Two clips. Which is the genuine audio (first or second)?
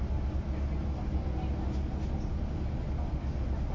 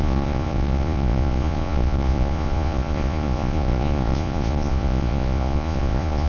first